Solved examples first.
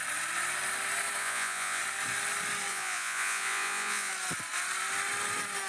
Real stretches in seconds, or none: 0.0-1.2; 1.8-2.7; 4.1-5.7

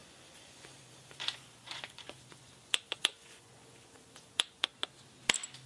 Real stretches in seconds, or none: 4.7-5.7

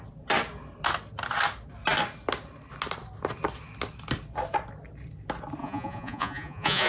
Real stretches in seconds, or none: 0.0-5.6

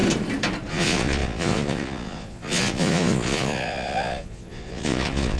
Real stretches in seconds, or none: 0.0-0.7

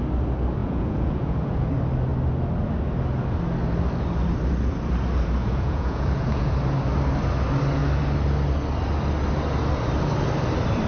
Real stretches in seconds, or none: 0.0-0.6; 1.7-5.4; 6.5-10.9

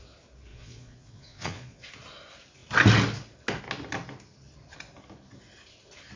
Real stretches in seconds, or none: 0.0-0.5; 1.9-6.2